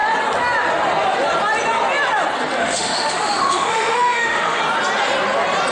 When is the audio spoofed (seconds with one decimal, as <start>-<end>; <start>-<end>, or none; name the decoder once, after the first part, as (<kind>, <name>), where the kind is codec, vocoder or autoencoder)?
2.6-4.6 (autoencoder, DAC-VAE)